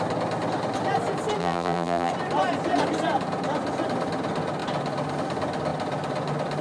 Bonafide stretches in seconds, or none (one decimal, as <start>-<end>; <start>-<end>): 0.0-1.4; 2.1-6.6